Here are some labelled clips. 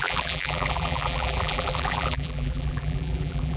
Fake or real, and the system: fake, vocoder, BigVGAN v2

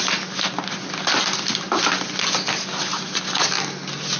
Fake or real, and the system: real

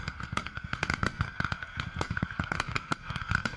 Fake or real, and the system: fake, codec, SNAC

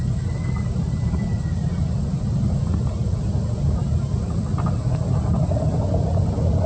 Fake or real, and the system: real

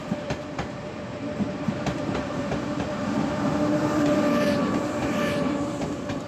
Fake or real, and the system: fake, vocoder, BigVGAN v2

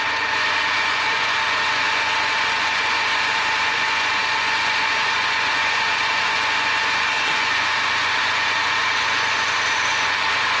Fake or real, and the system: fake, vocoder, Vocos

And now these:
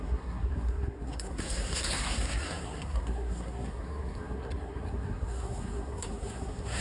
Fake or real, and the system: fake, codec, SNAC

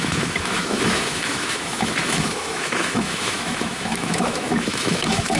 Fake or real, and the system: fake, autoencoder, DAC-VAE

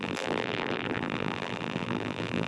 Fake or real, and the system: fake, vocoder, BigVGAN v2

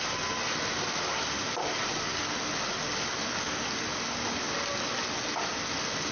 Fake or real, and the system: real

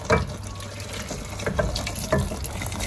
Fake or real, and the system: real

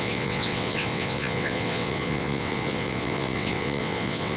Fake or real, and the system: fake, vocoder, WaveNeXt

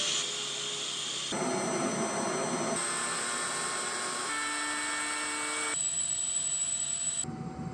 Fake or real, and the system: real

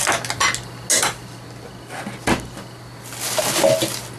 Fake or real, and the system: real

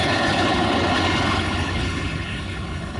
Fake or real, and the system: fake, codec, HILCodec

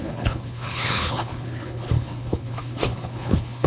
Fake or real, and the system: fake, codec, HILCodec